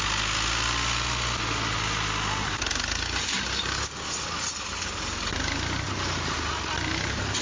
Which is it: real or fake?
real